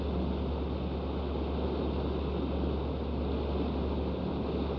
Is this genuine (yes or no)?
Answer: yes